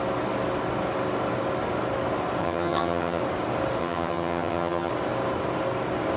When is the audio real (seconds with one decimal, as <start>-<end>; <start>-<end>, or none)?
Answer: 0.0-2.4; 3.2-3.8; 4.9-6.2